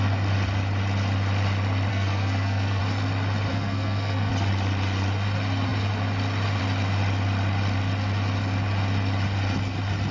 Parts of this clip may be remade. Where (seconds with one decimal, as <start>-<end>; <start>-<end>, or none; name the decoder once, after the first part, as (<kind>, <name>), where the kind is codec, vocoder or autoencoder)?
1.9-2.8 (codec, SNAC); 3.5-4.3